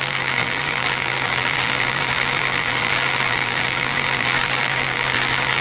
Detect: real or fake fake